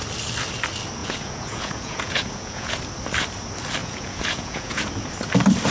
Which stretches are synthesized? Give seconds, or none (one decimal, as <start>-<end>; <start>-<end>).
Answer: 1.0-2.8; 3.8-4.9